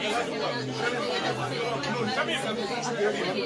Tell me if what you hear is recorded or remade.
recorded